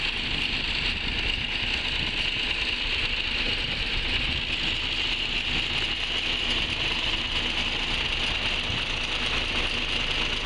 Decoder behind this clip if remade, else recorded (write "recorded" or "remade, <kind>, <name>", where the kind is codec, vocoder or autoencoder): recorded